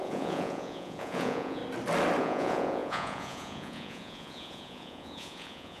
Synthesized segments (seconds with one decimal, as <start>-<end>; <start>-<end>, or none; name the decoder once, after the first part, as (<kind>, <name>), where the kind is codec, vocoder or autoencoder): 0.0-1.6 (vocoder, Vocos); 2.2-5.8